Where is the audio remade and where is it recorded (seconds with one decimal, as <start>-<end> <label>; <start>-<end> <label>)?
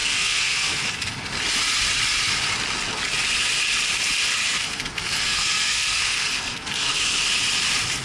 0.0-0.8 remade; 0.8-4.4 recorded; 4.4-7.0 remade; 7.0-8.0 recorded